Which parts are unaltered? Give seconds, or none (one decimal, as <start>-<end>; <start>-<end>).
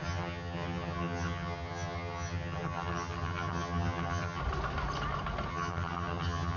4.4-5.5